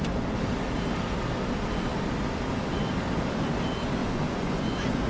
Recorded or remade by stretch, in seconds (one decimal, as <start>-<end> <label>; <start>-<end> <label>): 0.0-4.0 recorded; 4.0-5.1 remade